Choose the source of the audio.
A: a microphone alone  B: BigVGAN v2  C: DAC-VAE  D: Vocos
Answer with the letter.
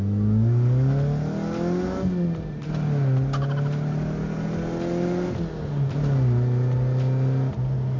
A